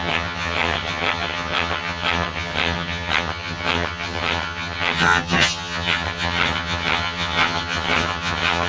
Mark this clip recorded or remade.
remade